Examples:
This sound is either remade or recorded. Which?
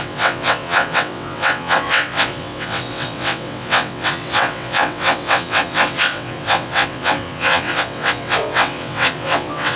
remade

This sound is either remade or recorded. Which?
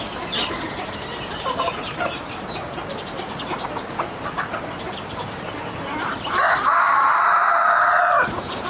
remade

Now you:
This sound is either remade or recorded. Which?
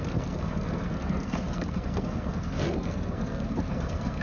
remade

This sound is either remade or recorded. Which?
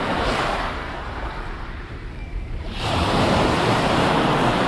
remade